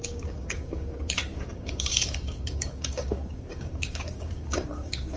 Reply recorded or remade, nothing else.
remade